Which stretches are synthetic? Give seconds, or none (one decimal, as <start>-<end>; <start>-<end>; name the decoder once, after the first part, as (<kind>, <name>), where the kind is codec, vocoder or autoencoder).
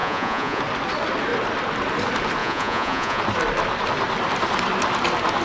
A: 0.0-0.6 (vocoder, Vocos); 2.4-3.2